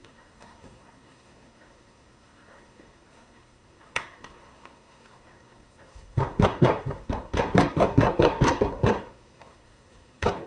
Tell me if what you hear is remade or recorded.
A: remade